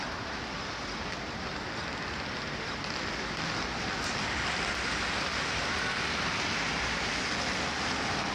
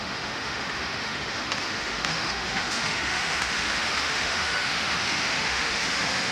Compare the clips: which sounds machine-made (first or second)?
second